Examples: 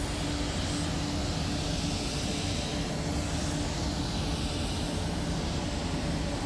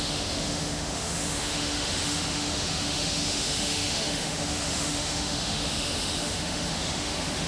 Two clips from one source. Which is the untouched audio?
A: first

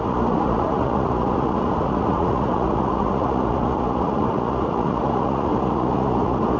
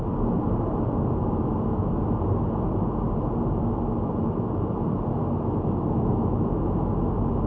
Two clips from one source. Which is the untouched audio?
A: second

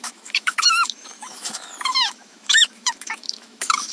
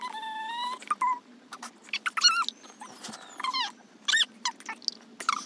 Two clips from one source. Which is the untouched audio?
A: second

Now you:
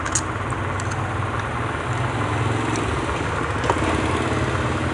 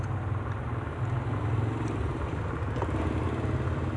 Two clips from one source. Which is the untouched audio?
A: first